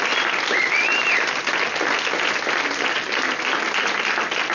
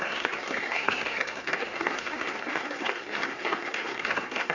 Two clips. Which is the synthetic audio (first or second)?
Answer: second